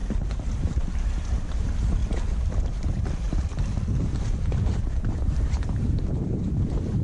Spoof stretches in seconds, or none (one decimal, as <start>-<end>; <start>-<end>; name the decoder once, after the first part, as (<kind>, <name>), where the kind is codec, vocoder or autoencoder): 0.5-2.0 (vocoder, BigVGAN v2); 4.2-7.0